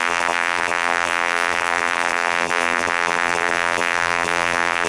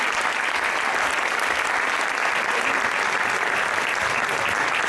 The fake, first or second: first